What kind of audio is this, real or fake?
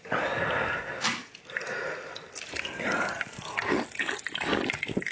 real